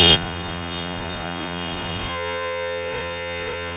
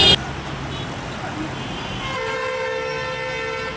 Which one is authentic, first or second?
second